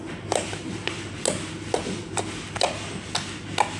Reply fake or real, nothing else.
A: real